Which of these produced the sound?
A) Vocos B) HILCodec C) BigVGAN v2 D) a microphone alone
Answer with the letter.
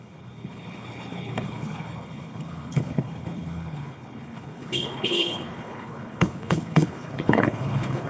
B